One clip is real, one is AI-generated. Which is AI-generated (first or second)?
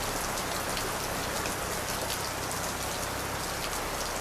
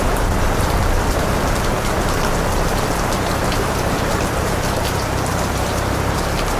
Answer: second